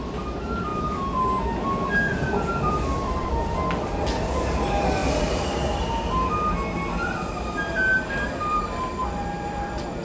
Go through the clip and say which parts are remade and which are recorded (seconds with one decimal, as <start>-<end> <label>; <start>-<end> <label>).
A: 0.0-10.0 recorded